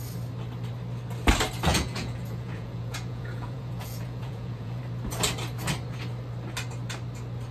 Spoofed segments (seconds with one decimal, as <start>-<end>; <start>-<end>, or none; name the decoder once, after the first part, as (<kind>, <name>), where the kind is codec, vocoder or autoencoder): 1.7-4.8 (vocoder, Vocos)